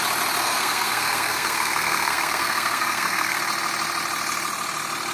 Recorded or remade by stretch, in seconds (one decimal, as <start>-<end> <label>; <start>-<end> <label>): 0.0-0.4 recorded; 0.4-3.4 remade; 3.4-5.1 recorded

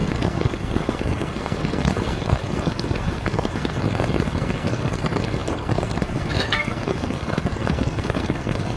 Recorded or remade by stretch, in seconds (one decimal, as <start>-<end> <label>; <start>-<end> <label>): 0.0-8.8 remade